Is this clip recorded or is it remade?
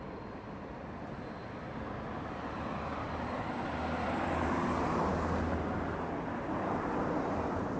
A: recorded